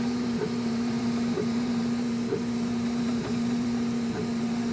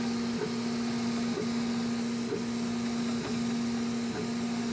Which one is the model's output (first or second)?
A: first